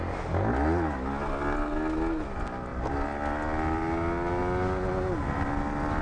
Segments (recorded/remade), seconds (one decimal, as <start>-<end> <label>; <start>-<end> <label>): 0.0-6.0 recorded